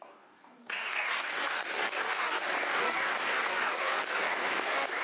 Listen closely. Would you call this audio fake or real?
fake